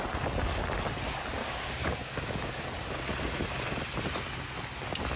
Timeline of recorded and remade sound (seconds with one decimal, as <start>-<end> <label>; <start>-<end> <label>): 0.0-1.4 recorded; 1.4-2.6 remade; 2.6-5.2 recorded

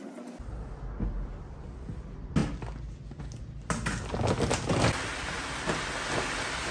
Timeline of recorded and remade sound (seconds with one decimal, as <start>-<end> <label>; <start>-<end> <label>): 0.0-6.7 recorded

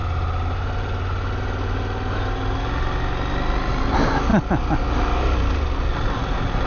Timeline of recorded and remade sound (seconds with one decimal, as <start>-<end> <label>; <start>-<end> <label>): 0.0-6.7 recorded

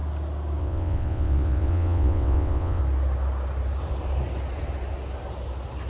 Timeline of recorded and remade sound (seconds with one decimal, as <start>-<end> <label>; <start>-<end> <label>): 0.0-0.6 recorded; 0.6-2.8 remade; 2.8-5.9 recorded

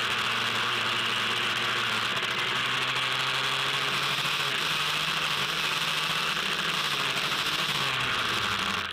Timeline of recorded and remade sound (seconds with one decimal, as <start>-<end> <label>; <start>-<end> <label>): 0.0-8.9 recorded

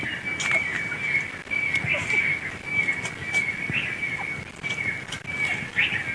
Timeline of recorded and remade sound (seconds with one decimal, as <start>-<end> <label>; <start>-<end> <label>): 0.0-6.1 recorded